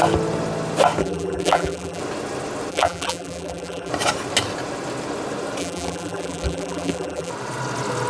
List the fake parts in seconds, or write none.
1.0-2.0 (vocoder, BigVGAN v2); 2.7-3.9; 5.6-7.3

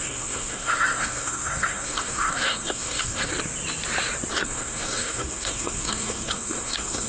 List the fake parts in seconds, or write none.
0.0-3.3 (codec, SNAC); 4.3-7.1

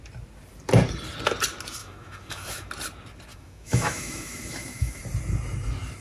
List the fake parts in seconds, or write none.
1.8-2.7 (autoencoder, DAC-VAE); 3.3-5.0